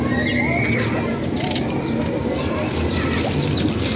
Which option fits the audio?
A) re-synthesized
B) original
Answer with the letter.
B